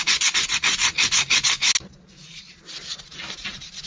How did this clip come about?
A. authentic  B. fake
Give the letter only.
A